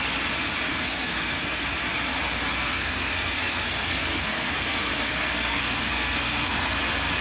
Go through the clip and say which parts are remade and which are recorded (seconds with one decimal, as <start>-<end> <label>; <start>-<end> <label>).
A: 0.0-0.7 recorded; 0.7-1.8 remade; 1.8-2.6 recorded; 2.6-6.7 remade; 6.7-7.2 recorded